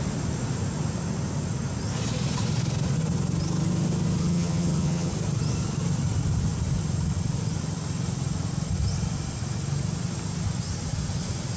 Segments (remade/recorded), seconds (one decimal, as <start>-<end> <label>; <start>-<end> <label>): 0.0-4.2 recorded; 4.2-5.1 remade; 5.1-11.6 recorded